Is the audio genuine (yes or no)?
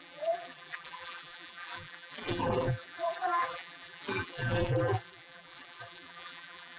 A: no